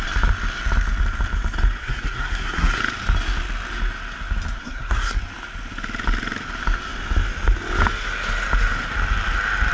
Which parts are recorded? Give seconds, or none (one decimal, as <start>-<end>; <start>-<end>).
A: 0.0-1.8; 2.8-4.6; 5.2-9.7